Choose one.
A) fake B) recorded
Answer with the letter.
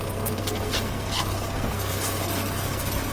A